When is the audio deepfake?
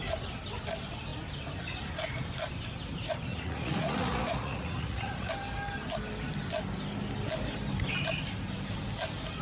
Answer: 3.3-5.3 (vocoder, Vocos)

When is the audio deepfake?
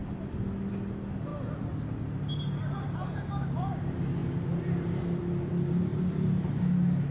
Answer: 0.0-0.7 (vocoder, BigVGAN v2); 5.9-6.4